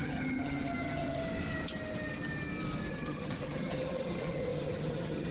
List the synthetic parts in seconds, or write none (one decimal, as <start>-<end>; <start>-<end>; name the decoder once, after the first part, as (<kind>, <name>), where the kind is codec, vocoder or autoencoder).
0.0-1.2 (vocoder, HiFi-GAN); 2.9-5.3